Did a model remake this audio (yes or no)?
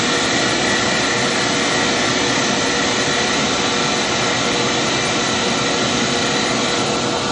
no